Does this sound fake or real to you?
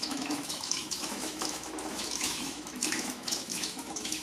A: fake